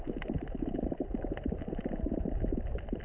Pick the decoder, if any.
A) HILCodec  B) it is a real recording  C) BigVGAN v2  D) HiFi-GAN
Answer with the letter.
C